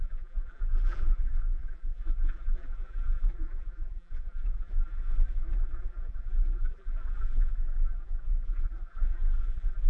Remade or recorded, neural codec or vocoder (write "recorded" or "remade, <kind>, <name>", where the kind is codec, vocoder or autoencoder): remade, vocoder, BigVGAN v2